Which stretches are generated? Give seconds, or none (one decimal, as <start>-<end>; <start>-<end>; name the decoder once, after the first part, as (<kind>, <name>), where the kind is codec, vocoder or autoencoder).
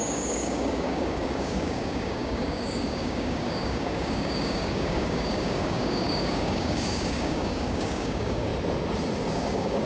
0.0-8.5 (codec, DAC); 9.3-9.9